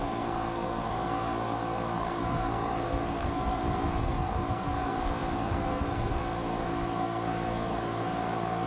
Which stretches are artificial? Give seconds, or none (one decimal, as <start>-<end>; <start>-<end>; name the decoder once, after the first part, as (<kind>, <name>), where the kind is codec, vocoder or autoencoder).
0.0-8.7 (codec, SNAC)